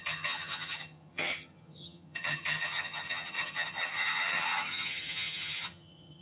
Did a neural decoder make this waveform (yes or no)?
yes